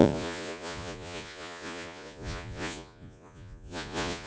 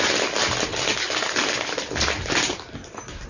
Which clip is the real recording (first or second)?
second